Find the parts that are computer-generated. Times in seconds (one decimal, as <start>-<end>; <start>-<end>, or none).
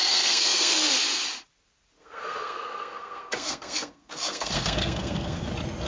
0.0-0.9; 2.0-5.5